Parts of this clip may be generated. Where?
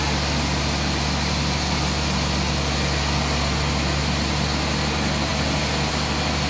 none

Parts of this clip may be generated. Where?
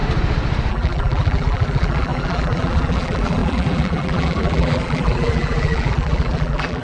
0.7-6.8 (vocoder, BigVGAN v2)